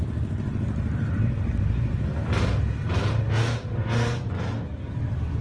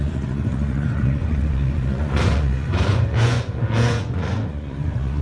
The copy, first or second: second